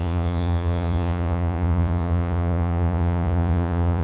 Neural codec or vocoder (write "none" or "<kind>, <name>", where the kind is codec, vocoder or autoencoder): vocoder, Vocos